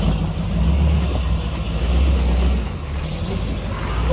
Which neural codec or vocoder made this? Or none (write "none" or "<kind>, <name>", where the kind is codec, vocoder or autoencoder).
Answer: none